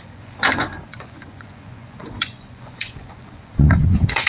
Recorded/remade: remade